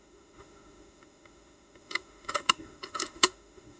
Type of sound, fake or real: fake